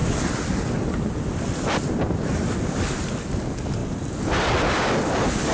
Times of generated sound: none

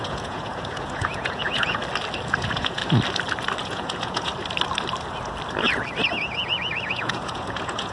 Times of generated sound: 0.0-1.8 (vocoder, Vocos); 2.3-2.8; 3.6-4.3; 6.8-7.9

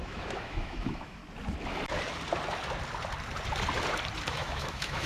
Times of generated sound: 0.0-1.2 (autoencoder, DAC-VAE); 4.3-5.1

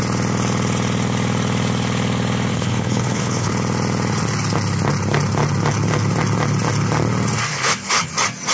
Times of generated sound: 2.5-3.5 (codec, HILCodec); 7.5-8.1

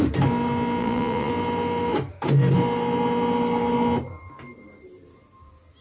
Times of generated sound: 0.8-1.3 (vocoder, Vocos)

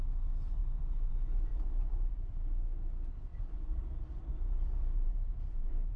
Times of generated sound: 1.5-2.4 (vocoder, BigVGAN v2); 3.3-6.0

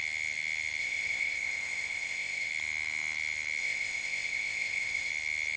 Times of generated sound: 0.8-2.5 (codec, ZipCodec); 3.6-5.1

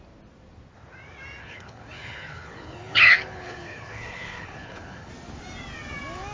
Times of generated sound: 1.4-5.1 (codec, HILCodec)